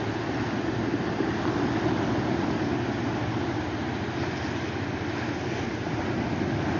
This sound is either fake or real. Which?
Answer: real